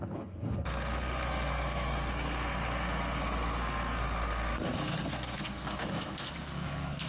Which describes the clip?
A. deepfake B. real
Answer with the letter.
A